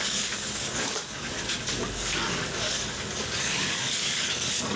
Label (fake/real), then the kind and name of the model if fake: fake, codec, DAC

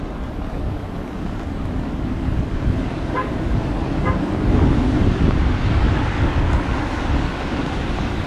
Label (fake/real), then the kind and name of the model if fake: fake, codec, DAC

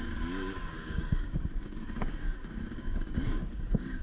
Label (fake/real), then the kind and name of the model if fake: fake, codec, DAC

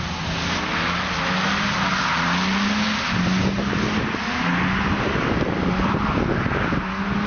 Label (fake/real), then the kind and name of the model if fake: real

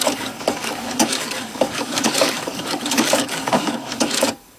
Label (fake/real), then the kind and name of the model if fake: fake, codec, DAC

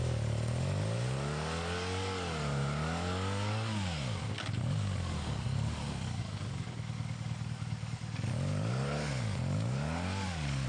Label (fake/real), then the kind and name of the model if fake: fake, codec, DAC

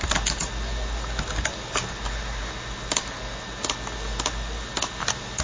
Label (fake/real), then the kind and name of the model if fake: real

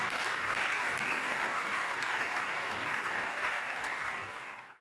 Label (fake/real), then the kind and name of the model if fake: fake, codec, DAC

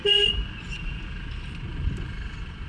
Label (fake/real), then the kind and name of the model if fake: real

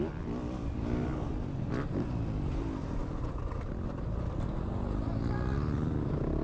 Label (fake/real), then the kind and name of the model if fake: real